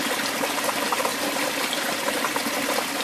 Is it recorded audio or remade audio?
recorded